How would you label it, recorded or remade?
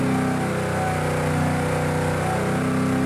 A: recorded